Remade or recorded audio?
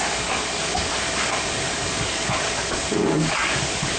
remade